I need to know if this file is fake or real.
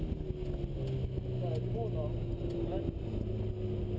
real